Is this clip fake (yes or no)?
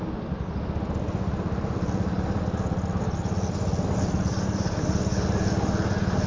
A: no